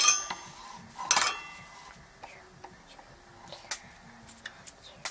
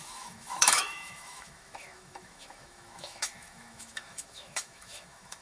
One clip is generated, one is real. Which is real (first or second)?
first